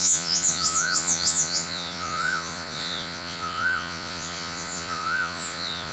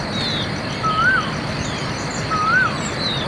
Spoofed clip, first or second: first